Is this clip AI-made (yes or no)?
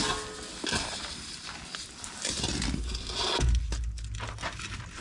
no